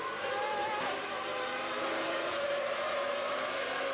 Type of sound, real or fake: fake